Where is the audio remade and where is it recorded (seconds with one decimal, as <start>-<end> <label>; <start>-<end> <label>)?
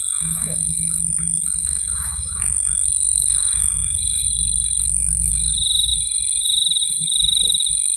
0.0-8.0 remade